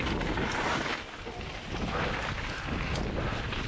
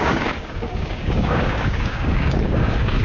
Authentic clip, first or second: first